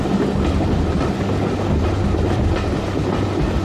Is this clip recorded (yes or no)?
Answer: yes